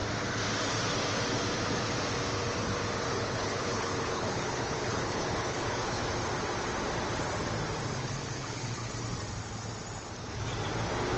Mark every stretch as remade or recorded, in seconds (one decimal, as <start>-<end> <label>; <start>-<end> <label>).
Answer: 0.0-3.1 recorded; 3.1-6.0 remade; 6.0-8.0 recorded; 8.0-8.9 remade; 8.9-11.2 recorded